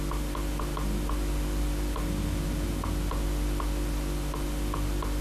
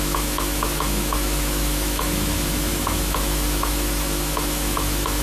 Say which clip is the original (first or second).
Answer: first